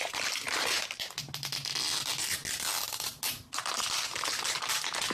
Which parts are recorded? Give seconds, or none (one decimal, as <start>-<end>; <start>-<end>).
0.0-5.1